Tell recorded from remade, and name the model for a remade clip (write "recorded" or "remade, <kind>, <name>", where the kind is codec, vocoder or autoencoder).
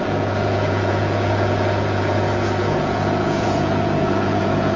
remade, vocoder, Vocos